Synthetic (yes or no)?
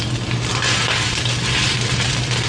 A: no